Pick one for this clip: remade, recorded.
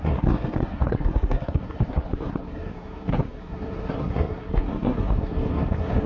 remade